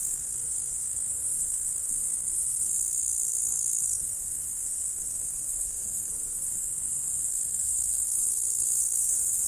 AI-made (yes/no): yes